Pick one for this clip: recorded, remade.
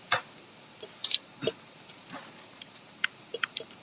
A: remade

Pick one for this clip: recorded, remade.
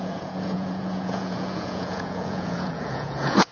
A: remade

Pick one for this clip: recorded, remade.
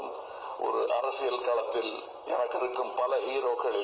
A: recorded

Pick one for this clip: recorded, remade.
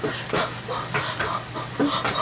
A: recorded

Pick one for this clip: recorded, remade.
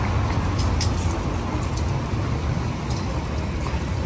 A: recorded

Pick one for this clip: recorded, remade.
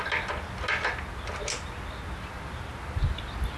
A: recorded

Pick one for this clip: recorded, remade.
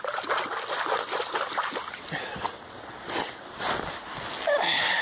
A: recorded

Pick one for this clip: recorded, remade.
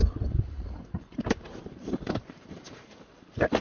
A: remade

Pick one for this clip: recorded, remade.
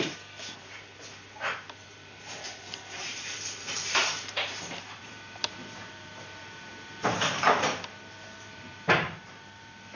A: remade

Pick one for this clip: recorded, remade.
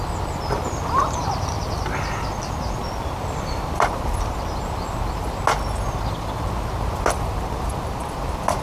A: recorded